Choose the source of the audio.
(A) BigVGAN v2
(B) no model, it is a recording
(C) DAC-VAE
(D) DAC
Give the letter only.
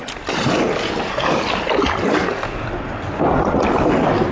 B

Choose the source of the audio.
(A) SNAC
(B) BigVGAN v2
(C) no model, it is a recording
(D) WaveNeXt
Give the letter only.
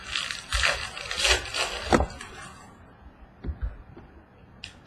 C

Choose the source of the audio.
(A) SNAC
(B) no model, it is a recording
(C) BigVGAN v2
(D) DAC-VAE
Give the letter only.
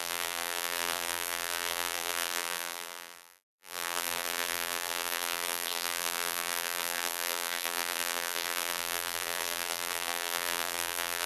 C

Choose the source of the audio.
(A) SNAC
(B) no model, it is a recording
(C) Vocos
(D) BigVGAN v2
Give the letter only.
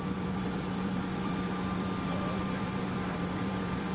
D